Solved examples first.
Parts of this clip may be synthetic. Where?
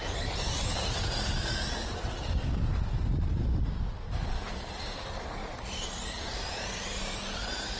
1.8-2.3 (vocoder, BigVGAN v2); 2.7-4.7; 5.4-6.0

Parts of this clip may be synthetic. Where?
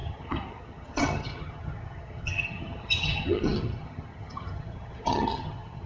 0.0-5.9 (vocoder, HiFi-GAN)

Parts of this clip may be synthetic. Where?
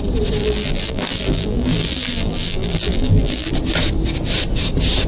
0.4-3.5 (vocoder, BigVGAN v2)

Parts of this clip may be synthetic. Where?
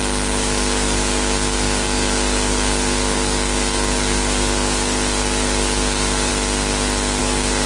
0.0-6.3 (codec, DAC); 7.2-7.7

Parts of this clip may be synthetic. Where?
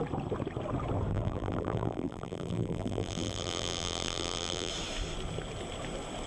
1.1-4.7 (vocoder, BigVGAN v2)